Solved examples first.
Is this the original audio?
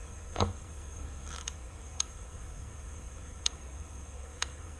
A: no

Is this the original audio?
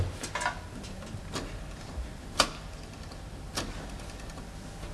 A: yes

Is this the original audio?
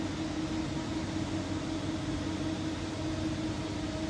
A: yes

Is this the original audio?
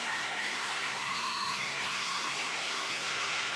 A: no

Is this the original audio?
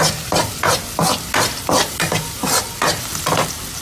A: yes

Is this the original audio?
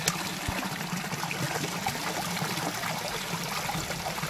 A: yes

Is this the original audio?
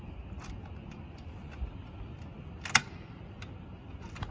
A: yes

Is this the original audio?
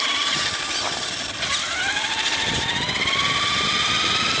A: yes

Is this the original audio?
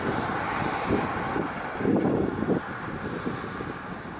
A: yes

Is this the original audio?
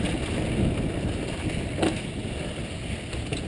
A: yes